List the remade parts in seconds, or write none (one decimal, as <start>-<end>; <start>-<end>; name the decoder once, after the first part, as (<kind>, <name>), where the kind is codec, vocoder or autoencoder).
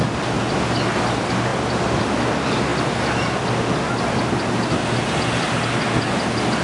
none